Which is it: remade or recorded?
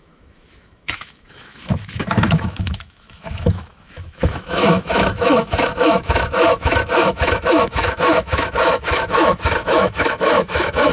remade